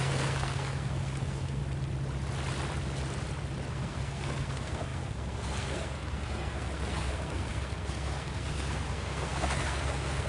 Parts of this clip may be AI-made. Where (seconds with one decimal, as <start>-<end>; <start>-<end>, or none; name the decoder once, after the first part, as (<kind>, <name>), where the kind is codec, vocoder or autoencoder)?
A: 0.0-1.6 (codec, SNAC); 3.7-10.3